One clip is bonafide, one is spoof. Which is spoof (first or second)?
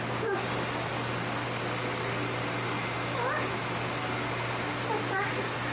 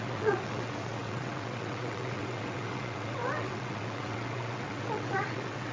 second